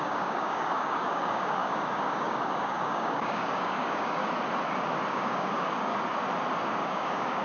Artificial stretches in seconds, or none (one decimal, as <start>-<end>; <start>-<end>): 0.0-4.2; 5.1-5.9; 6.8-7.4